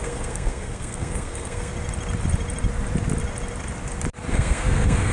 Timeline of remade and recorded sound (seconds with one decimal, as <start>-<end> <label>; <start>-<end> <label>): 0.0-1.7 remade; 1.7-4.3 recorded; 4.3-5.1 remade